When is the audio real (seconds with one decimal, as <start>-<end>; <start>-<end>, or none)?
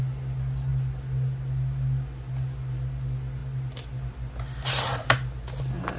0.0-6.0